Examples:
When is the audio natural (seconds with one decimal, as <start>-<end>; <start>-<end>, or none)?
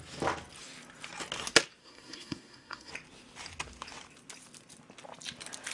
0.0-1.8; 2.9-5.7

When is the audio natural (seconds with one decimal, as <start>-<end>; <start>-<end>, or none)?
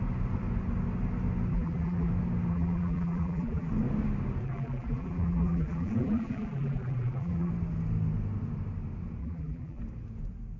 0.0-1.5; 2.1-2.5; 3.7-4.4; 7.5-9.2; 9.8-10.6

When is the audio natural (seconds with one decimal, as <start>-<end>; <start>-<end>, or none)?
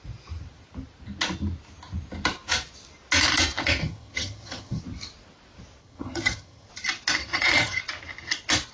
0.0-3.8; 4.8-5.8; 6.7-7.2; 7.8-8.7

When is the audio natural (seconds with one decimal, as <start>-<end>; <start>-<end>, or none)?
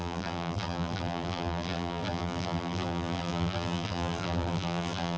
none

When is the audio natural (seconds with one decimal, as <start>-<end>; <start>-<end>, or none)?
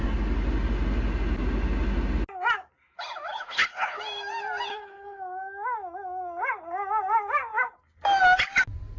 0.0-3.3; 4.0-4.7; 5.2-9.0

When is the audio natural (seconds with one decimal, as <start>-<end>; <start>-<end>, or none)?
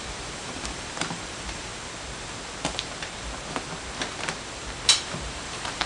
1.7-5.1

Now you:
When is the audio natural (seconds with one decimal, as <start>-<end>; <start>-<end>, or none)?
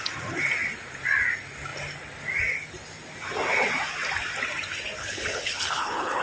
0.0-5.0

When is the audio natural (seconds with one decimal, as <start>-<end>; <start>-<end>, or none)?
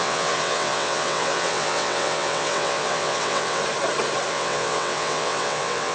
3.6-4.3